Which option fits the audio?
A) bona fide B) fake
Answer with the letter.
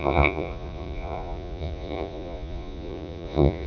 B